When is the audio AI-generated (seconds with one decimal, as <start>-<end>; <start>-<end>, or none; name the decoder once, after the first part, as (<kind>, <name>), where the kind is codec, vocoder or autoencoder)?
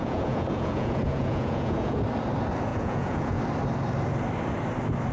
0.0-2.0 (vocoder, Vocos); 2.7-3.4